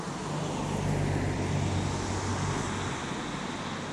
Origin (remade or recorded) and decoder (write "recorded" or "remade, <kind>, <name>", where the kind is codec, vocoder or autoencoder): recorded